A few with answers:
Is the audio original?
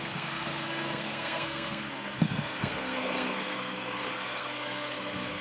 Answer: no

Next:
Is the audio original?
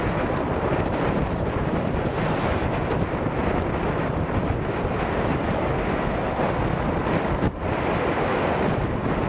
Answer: yes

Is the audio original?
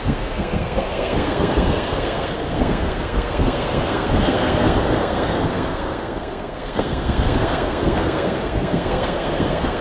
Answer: no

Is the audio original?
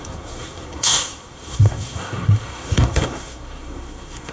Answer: no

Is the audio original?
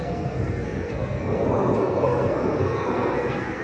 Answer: no